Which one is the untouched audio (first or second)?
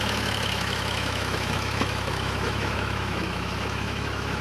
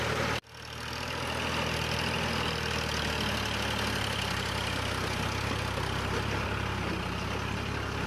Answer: second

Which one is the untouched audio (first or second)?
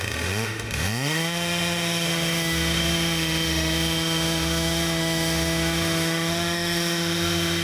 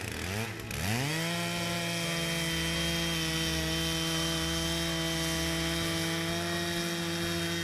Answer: second